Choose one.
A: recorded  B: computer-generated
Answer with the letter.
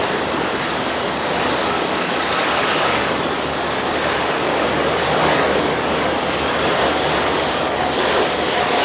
B